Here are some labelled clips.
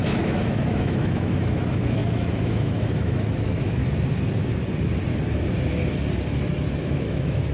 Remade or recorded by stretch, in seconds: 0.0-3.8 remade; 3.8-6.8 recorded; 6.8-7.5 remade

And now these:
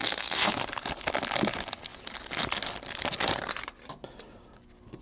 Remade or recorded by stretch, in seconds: 0.0-0.5 remade; 0.5-5.0 recorded

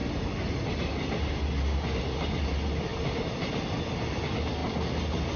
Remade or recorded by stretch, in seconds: 0.0-5.4 recorded

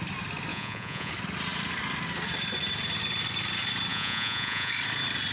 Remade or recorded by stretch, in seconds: 0.0-0.5 recorded; 0.5-1.1 remade; 1.1-3.9 recorded; 3.9-4.7 remade; 4.7-5.3 recorded

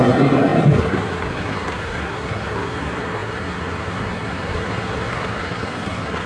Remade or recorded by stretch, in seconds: 0.0-6.3 remade